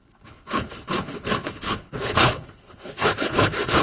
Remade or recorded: remade